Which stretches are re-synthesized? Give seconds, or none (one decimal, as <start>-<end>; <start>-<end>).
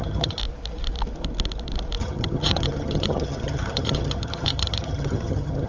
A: 0.0-0.4; 2.0-5.7